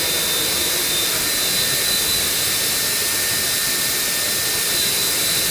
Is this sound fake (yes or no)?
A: no